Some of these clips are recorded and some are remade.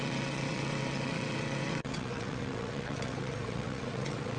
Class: remade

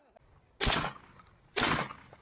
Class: recorded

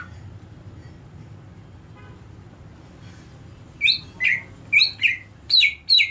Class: recorded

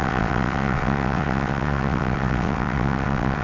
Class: remade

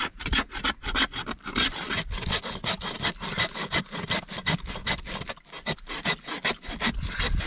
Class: recorded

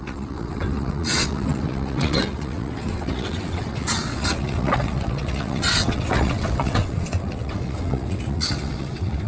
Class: remade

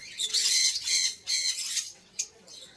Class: remade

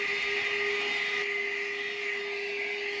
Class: recorded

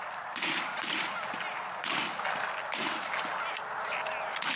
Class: recorded